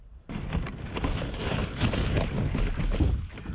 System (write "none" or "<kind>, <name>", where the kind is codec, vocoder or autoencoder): none